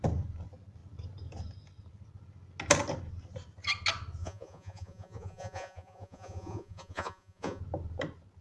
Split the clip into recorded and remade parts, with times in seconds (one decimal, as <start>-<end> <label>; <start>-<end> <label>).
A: 0.0-4.2 recorded; 4.2-7.6 remade; 7.6-8.4 recorded